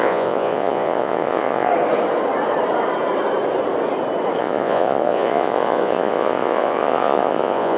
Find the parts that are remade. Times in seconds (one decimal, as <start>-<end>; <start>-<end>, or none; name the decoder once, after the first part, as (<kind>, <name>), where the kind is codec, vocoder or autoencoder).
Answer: 0.0-1.7 (vocoder, Vocos); 4.4-7.8